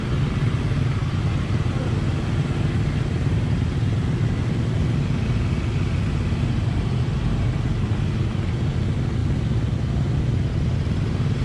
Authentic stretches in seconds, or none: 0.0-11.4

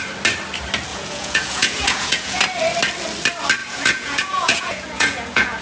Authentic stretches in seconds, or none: 0.0-0.9; 2.4-3.6

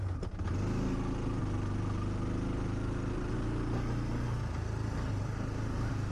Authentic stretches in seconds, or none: 0.0-5.2